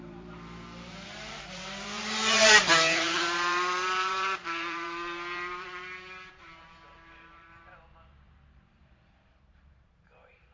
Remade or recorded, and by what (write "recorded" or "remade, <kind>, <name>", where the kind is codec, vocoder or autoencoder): remade, vocoder, BigVGAN v2